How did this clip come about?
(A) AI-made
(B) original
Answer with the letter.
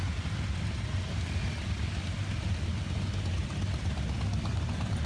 B